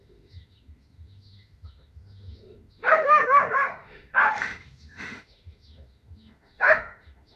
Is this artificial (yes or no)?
yes